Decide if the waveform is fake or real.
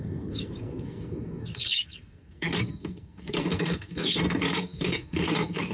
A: fake